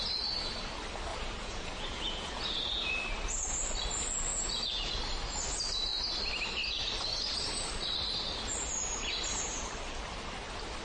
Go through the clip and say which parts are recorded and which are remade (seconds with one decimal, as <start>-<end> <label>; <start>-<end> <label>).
0.0-1.1 recorded; 1.1-2.9 remade; 2.9-4.3 recorded; 4.3-5.0 remade; 5.0-10.8 recorded